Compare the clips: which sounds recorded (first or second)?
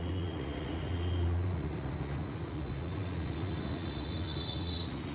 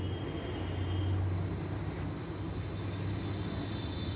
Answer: second